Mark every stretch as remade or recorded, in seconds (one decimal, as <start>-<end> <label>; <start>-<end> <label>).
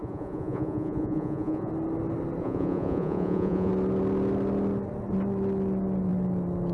0.0-1.7 remade; 1.7-2.4 recorded; 2.4-3.7 remade; 3.7-6.7 recorded